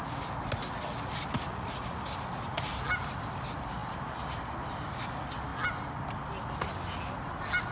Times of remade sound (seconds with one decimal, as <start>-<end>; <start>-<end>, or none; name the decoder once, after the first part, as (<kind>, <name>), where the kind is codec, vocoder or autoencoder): 1.5-2.0 (vocoder, Vocos)